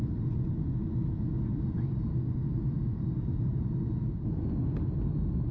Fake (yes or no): no